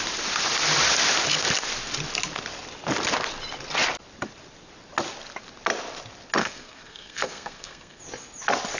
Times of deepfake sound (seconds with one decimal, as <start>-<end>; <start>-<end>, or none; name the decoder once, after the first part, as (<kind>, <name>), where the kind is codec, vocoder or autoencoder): 6.4-8.0 (codec, SNAC)